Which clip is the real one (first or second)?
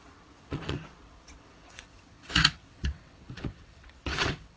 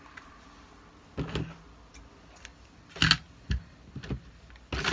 second